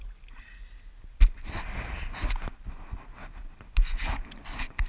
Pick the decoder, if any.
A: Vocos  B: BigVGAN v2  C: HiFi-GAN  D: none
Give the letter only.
D